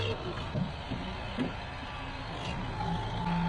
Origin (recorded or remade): recorded